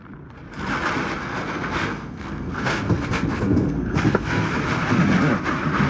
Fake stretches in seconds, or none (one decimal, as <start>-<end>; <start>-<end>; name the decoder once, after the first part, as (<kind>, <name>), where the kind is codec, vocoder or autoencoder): 1.2-4.5 (codec, SNAC)